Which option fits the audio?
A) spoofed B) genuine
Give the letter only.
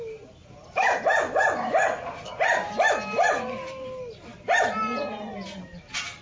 B